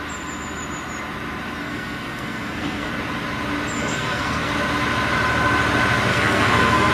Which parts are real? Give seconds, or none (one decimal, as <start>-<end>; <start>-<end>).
0.0-1.6; 2.9-3.8; 4.5-6.1